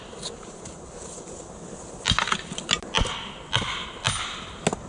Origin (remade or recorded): recorded